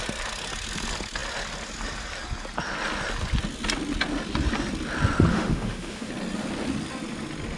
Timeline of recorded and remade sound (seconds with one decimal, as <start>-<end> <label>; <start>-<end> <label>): 0.0-5.3 recorded; 5.3-6.1 remade; 6.1-7.6 recorded